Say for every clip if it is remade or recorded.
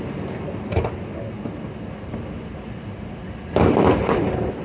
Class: recorded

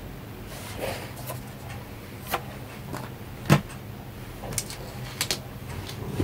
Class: recorded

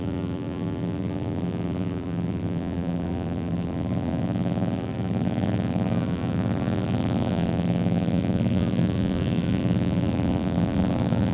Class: remade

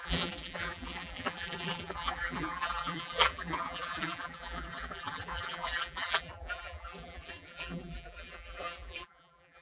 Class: remade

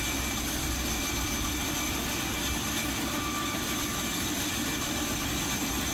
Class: recorded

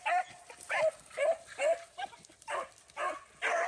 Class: recorded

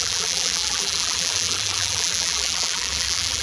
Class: remade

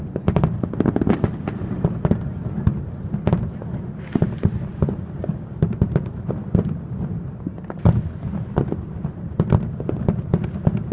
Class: recorded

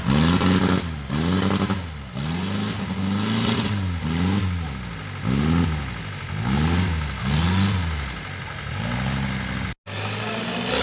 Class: recorded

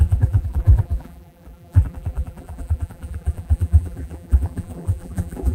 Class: remade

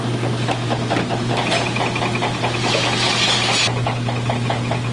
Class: recorded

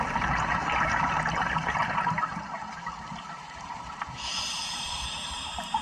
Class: remade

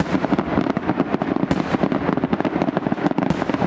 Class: remade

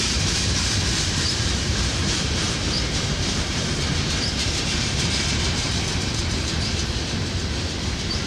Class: remade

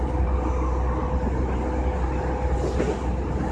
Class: recorded